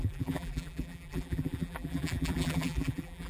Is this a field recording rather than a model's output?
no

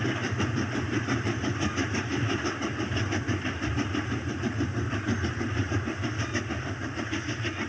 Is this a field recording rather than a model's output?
yes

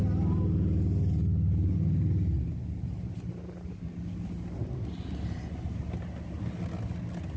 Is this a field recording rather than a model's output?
yes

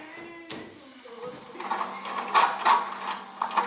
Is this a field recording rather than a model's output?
yes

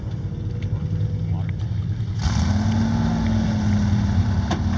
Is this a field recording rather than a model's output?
yes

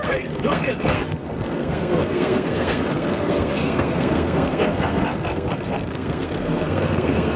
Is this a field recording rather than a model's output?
no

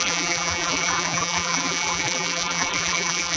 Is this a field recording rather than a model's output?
no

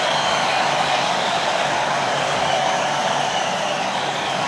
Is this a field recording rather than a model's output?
no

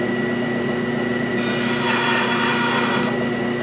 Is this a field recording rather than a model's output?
yes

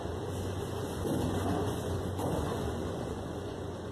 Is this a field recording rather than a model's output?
no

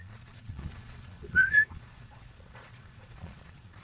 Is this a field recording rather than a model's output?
no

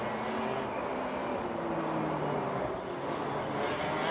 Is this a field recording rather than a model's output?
yes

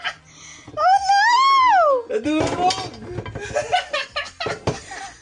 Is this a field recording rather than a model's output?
yes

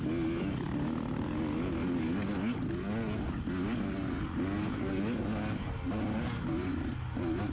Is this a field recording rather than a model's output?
yes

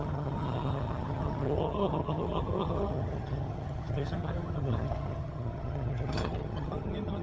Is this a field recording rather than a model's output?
no